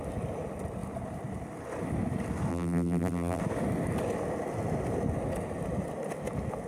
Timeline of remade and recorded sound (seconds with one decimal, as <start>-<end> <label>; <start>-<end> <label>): 0.0-2.5 recorded; 2.5-3.4 remade; 3.4-6.7 recorded